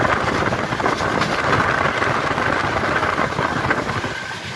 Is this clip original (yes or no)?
yes